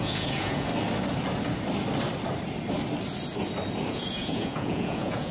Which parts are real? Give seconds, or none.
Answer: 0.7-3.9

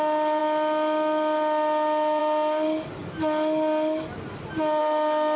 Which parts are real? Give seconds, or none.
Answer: 0.0-5.4

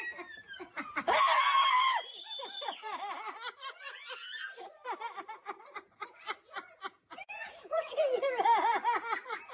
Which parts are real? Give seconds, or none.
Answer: 0.0-6.9; 8.3-9.5

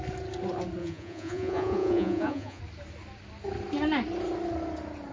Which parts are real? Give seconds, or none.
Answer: 0.0-0.8; 2.6-5.1

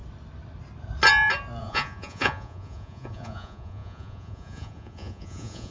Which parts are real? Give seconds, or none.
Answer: 0.0-1.6

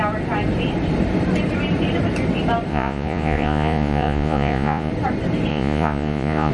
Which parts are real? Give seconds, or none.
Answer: 0.0-2.7; 4.9-5.5

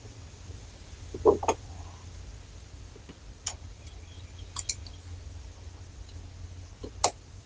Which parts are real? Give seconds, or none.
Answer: 0.0-7.5

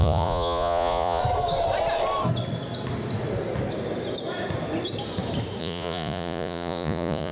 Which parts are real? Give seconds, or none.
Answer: 1.2-5.6